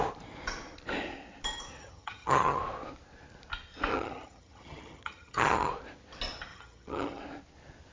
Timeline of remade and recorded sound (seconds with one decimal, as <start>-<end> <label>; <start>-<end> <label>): 0.0-1.8 recorded; 1.8-2.6 remade; 2.6-3.9 recorded; 3.9-5.7 remade; 5.7-6.5 recorded; 6.5-7.2 remade; 7.2-7.9 recorded